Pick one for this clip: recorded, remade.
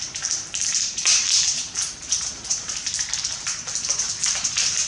remade